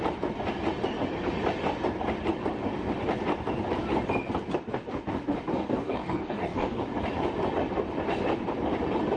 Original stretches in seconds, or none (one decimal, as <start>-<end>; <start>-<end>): 0.0-5.5; 6.8-9.2